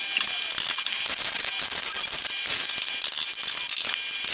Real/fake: real